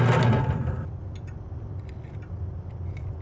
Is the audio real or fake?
real